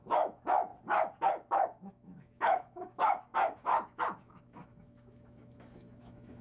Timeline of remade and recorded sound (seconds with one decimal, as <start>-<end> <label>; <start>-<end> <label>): 0.0-0.7 remade; 0.7-1.5 recorded; 1.5-6.4 remade